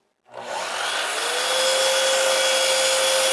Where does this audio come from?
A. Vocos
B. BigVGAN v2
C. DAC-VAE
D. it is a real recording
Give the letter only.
D